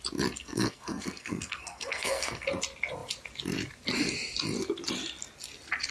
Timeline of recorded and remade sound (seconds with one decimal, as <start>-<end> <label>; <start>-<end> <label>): 0.0-0.4 recorded; 0.4-2.5 remade; 2.5-5.9 recorded